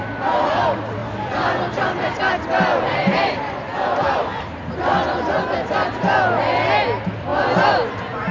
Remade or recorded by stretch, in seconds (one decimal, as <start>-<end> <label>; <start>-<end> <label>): 0.0-1.0 recorded; 1.0-2.2 remade; 2.2-2.7 recorded; 2.7-4.6 remade; 4.6-8.3 recorded